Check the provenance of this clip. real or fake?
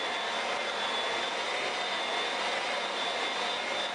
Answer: real